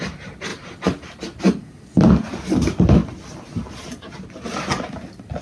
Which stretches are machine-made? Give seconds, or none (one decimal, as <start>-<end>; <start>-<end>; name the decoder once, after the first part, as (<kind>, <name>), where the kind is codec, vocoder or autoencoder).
none